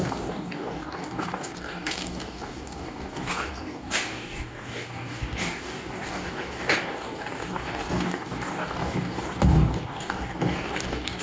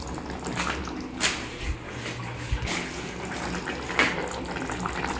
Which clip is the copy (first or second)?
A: first